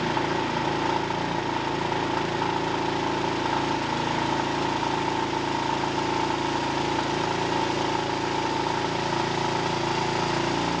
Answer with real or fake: real